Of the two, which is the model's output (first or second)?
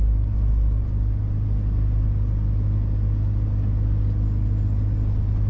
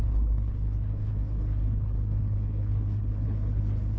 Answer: second